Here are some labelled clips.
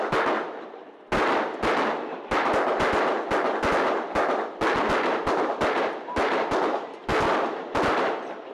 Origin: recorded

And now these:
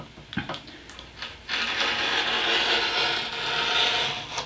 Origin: recorded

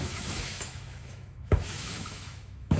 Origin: remade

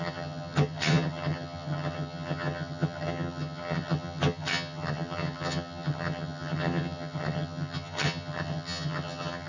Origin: remade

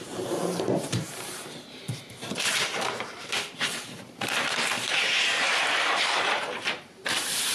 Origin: remade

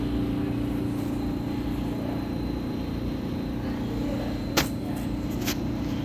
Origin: recorded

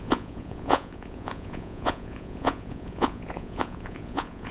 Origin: remade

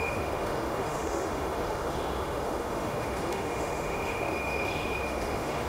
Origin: remade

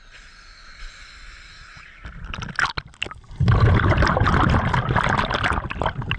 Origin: recorded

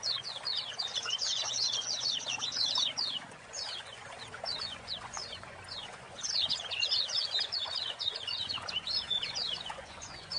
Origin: remade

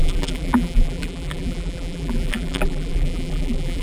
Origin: remade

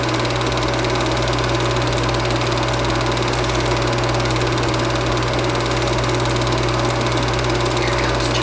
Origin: recorded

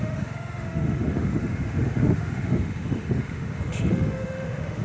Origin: remade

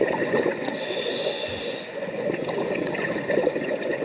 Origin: remade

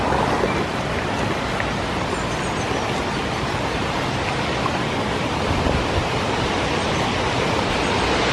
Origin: recorded